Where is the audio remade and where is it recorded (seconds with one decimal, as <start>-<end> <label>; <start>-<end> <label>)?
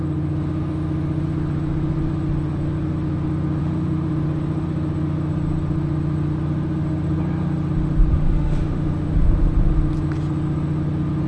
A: 0.0-3.6 recorded; 3.6-4.1 remade; 4.1-8.1 recorded; 8.1-9.7 remade; 9.7-11.3 recorded